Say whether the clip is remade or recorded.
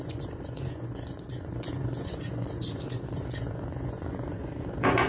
remade